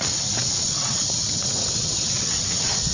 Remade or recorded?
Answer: remade